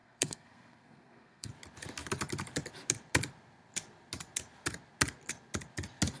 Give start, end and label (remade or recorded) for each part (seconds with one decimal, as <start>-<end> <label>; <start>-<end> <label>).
0.0-1.5 remade; 1.5-6.2 recorded